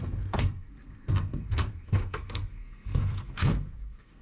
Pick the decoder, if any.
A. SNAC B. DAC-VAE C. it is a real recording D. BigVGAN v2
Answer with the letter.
A